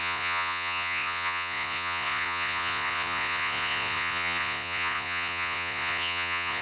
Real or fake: fake